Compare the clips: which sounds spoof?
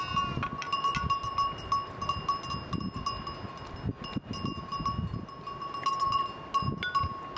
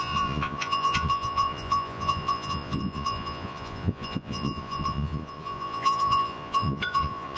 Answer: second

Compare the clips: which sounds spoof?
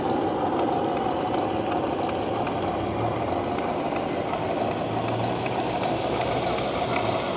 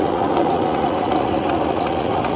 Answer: second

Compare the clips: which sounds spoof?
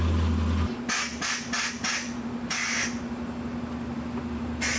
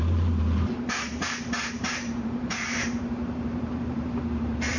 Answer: second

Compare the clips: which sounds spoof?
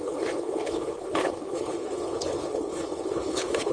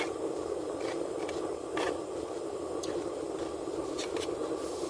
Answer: first